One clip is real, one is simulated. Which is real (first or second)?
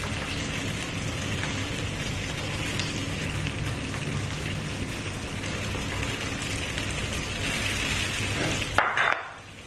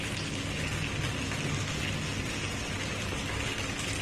second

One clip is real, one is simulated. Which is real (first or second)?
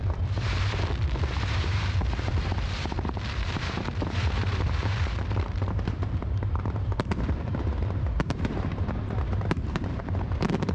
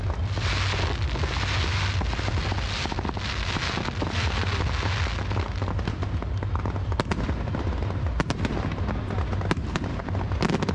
second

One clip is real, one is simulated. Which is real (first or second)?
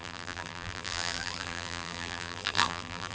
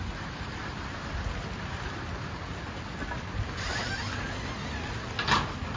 second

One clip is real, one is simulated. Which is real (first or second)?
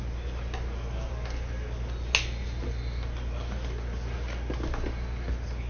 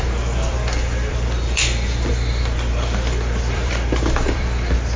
first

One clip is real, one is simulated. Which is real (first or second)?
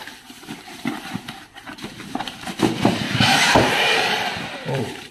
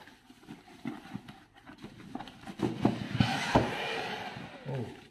second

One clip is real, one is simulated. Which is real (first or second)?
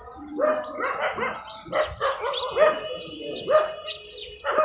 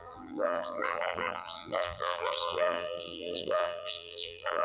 first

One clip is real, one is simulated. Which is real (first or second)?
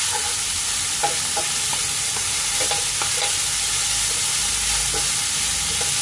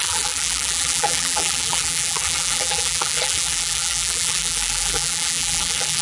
first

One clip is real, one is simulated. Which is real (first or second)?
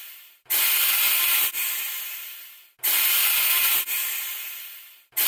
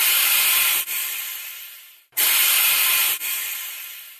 first